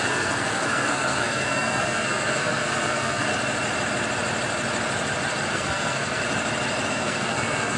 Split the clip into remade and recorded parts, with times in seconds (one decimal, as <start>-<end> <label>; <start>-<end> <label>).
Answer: 0.0-3.3 remade; 3.3-5.5 recorded; 5.5-6.2 remade; 6.2-6.9 recorded; 6.9-7.8 remade